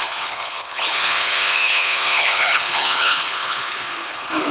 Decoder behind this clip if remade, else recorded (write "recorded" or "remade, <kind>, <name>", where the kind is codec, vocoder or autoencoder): remade, codec, HILCodec